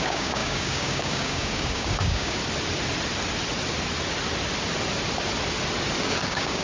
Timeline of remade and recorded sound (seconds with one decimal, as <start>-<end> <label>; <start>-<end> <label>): 0.0-2.4 remade; 2.4-6.0 recorded; 6.0-6.6 remade